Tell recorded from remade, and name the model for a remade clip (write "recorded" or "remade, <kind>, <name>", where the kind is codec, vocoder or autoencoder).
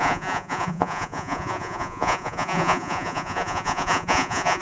remade, vocoder, Vocos